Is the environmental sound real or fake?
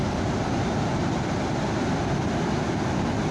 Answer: real